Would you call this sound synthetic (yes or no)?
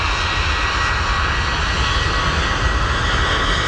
no